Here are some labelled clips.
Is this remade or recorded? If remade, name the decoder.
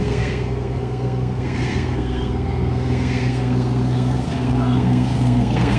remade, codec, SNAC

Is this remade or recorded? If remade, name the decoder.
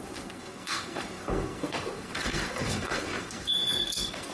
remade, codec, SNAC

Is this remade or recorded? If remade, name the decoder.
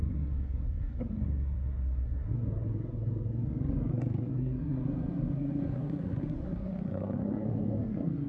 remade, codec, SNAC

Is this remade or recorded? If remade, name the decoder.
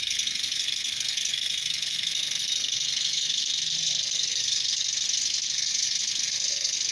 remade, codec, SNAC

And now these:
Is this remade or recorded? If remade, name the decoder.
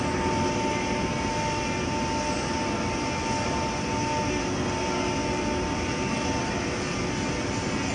recorded